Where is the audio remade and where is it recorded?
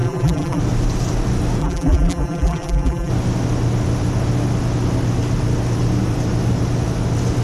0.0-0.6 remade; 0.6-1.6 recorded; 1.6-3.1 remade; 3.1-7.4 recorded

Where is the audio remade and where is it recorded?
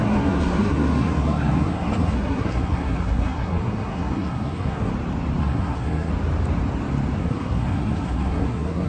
0.0-4.9 remade; 4.9-5.4 recorded; 5.4-6.1 remade; 6.1-7.2 recorded; 7.2-8.9 remade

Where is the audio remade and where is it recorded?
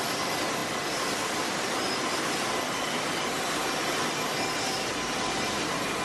0.0-6.0 recorded